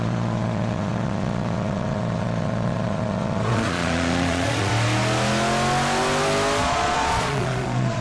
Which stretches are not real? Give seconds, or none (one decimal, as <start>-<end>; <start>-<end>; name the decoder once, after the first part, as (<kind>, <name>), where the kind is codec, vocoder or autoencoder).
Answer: 0.0-4.7 (vocoder, Vocos); 6.6-8.0